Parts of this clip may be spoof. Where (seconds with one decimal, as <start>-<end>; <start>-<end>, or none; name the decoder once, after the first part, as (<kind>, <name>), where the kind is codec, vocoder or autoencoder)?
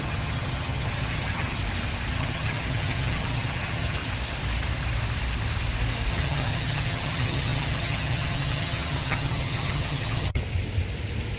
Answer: 0.0-1.6 (vocoder, HiFi-GAN); 2.1-4.0; 6.1-10.4